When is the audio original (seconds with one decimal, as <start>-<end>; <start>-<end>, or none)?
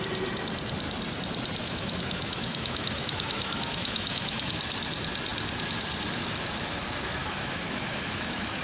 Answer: 0.0-1.6; 4.6-7.2